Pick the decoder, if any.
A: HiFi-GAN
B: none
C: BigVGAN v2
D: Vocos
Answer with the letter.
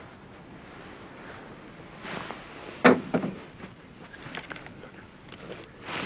B